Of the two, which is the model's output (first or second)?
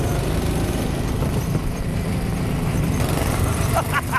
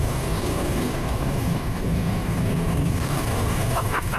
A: second